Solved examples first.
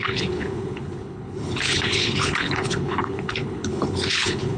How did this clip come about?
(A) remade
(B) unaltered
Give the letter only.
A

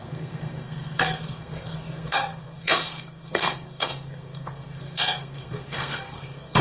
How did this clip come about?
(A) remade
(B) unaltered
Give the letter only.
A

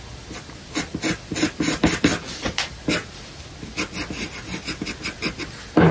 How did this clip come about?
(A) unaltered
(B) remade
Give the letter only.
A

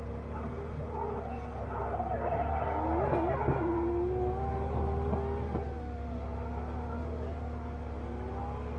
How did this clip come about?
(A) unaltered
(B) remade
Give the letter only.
A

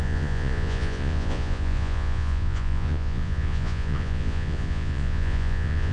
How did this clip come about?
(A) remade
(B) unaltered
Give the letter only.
A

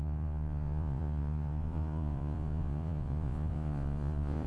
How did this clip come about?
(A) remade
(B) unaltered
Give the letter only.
A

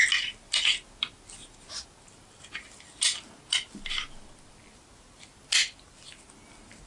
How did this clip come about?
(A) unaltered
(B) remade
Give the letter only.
A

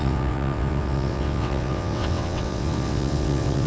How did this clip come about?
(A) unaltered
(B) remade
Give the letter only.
B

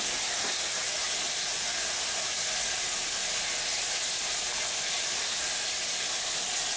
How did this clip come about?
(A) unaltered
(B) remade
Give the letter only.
A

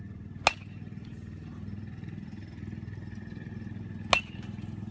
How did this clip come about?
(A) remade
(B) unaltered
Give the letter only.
B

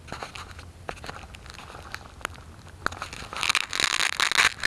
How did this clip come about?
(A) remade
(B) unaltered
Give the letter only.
B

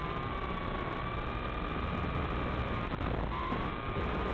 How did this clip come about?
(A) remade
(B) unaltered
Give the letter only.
B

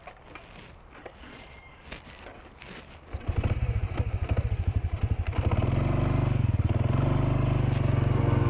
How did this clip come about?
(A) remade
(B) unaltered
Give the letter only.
B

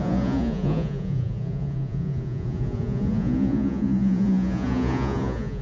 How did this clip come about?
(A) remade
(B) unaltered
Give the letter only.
A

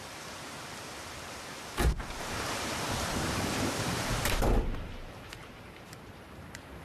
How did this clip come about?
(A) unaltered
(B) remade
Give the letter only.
B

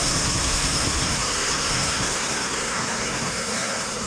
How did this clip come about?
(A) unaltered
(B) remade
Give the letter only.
B